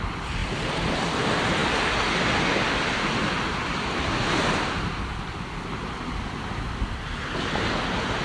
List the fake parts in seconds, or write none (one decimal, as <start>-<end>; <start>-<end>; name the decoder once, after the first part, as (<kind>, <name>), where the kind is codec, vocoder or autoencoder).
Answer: none